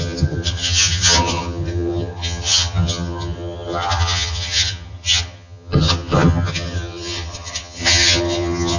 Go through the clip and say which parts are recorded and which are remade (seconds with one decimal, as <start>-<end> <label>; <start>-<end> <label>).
0.0-8.8 remade